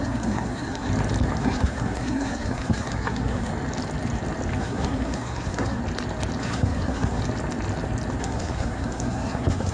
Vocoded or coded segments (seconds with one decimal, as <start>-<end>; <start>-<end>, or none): 0.0-0.9; 1.4-3.5; 4.6-5.8; 6.4-7.2; 8.2-9.7